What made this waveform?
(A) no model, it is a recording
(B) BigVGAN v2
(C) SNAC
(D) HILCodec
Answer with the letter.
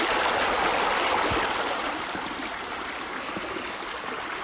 A